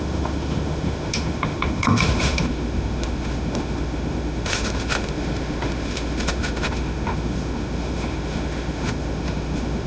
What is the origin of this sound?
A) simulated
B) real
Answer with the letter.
A